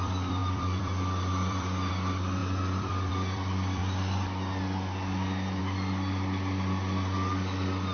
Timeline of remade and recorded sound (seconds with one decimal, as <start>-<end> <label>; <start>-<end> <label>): 0.0-3.8 remade; 3.8-5.6 recorded; 5.6-7.9 remade